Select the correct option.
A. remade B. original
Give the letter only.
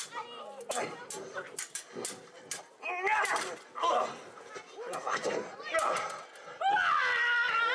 B